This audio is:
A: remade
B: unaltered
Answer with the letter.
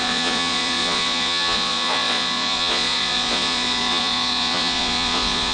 A